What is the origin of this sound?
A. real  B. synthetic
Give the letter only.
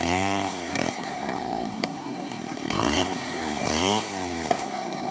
B